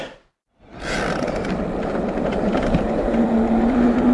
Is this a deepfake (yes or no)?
yes